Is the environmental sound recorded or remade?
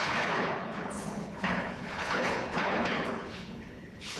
remade